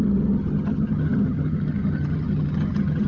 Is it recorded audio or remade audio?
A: remade